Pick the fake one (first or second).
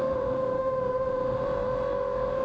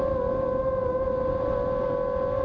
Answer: first